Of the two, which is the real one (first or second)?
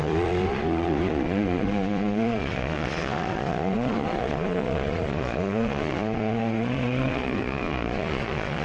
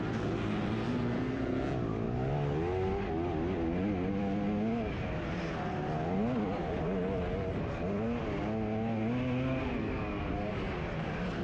second